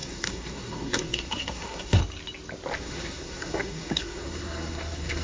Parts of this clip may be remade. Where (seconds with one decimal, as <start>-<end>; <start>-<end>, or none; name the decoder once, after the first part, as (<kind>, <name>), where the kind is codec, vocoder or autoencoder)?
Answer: 0.0-2.0 (codec, SNAC); 2.8-5.2